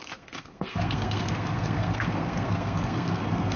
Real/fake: fake